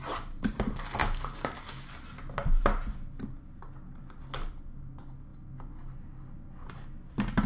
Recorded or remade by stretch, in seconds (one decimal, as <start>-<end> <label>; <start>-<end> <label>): 0.0-7.5 recorded